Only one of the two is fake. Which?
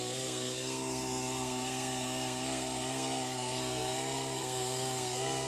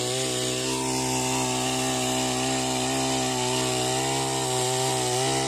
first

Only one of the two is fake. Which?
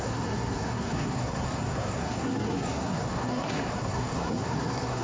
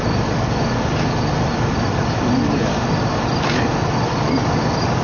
first